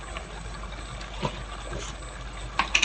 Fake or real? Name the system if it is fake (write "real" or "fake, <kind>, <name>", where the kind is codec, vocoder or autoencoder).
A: real